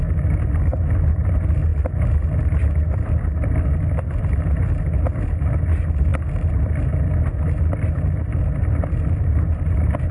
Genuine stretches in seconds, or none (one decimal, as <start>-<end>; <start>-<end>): 0.0-10.1